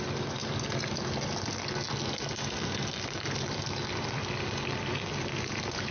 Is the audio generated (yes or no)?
no